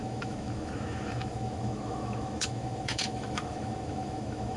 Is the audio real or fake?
fake